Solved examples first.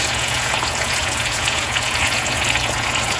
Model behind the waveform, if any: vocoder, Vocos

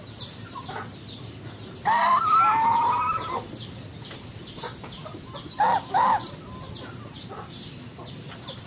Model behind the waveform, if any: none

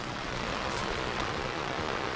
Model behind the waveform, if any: vocoder, Vocos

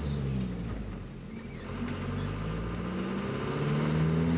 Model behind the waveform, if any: none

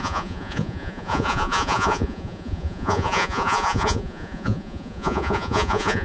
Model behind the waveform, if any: vocoder, Vocos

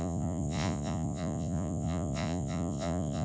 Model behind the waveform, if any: vocoder, Vocos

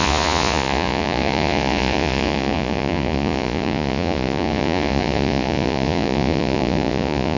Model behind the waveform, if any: vocoder, Vocos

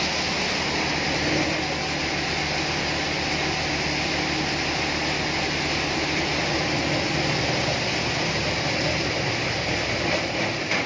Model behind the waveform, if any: none